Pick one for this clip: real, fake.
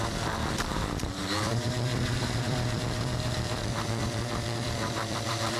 fake